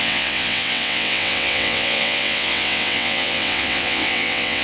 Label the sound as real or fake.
fake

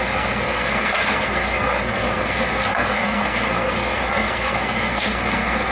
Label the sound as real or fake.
fake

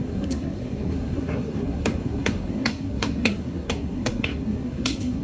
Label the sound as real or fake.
fake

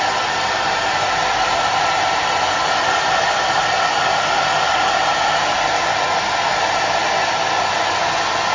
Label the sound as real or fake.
real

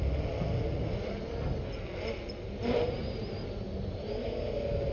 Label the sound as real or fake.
real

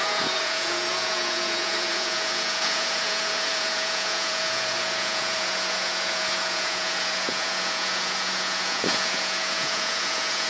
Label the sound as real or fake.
fake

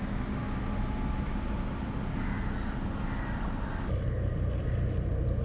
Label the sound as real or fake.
real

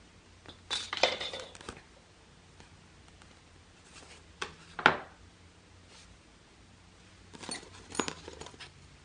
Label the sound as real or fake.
real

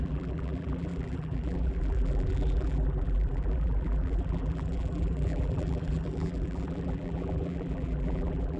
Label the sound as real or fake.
fake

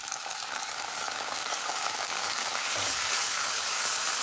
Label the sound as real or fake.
fake